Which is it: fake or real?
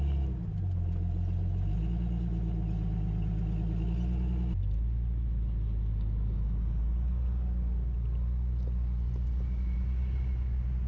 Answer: real